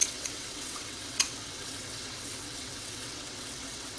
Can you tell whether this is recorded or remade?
remade